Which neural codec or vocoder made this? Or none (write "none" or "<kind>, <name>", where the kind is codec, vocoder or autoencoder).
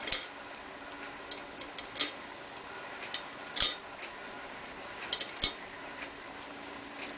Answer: none